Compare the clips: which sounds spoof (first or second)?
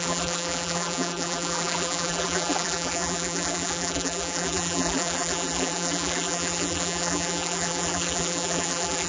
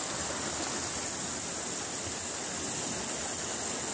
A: first